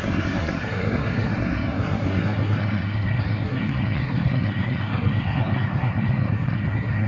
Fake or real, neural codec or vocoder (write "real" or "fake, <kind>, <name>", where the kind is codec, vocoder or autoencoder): fake, codec, SNAC